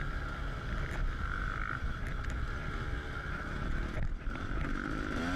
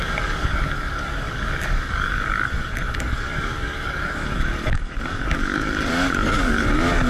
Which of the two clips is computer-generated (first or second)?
second